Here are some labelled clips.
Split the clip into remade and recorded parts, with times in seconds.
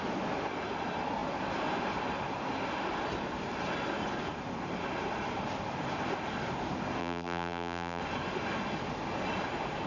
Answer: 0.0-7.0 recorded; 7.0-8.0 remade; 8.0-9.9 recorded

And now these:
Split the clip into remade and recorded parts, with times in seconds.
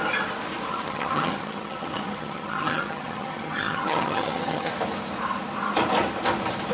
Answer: 0.0-0.7 recorded; 0.7-4.7 remade; 4.7-6.7 recorded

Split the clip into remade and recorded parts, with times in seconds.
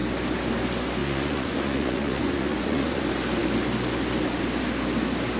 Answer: 0.0-1.0 recorded; 1.0-3.0 remade; 3.0-5.4 recorded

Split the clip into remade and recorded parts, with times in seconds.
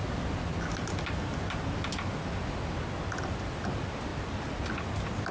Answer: 0.0-5.3 recorded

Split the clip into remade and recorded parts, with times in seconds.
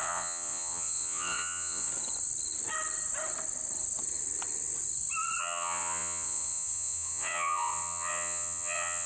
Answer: 0.0-1.9 remade; 1.9-5.4 recorded; 5.4-9.1 remade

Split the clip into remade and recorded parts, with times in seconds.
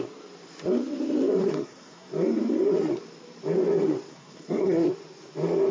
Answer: 0.0-1.4 recorded; 1.4-2.1 remade; 2.1-4.1 recorded; 4.1-4.9 remade; 4.9-5.7 recorded